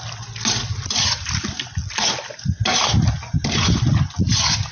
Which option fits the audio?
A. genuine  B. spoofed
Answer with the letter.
A